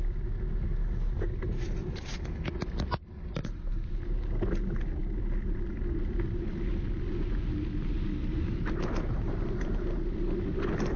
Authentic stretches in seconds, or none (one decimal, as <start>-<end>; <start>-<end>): 0.0-11.0